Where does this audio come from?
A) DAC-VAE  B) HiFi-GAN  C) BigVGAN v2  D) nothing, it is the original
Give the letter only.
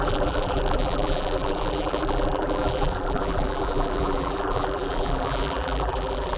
C